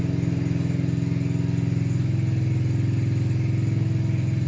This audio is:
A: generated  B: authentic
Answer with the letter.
B